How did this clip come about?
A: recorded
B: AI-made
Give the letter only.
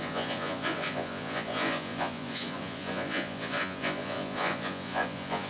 B